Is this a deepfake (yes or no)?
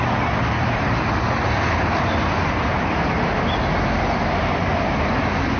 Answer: no